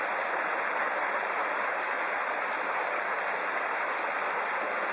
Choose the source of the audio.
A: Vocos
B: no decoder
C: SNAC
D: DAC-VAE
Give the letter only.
B